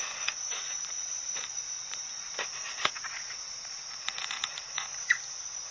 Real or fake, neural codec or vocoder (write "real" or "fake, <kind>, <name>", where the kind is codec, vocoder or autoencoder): fake, vocoder, Vocos